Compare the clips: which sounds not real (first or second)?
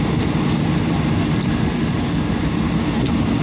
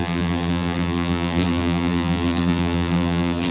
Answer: second